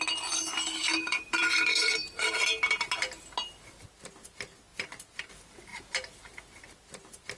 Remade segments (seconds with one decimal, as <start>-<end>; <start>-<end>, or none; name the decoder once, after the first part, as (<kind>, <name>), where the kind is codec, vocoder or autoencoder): 1.1-2.4 (vocoder, BigVGAN v2); 4.7-5.3; 5.7-6.3